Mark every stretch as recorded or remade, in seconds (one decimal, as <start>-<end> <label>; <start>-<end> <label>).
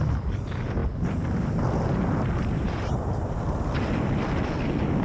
0.0-5.0 recorded